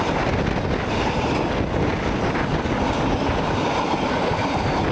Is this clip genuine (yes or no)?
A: yes